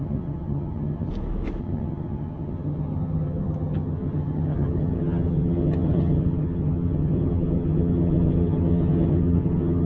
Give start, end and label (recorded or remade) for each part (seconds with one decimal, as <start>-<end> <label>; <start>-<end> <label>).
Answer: 0.0-1.1 remade; 1.1-1.6 recorded; 1.6-9.9 remade